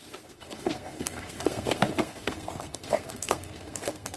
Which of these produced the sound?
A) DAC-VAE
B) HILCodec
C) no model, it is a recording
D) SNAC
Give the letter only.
D